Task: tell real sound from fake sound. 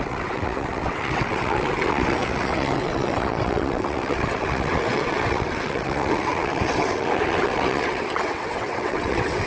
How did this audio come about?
fake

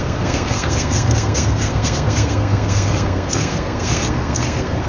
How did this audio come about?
fake